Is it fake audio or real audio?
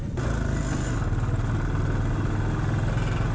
real